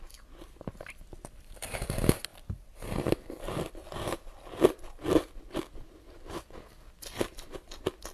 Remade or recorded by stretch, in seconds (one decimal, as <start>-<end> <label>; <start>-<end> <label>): 0.0-2.3 recorded; 2.3-5.4 remade; 5.4-8.1 recorded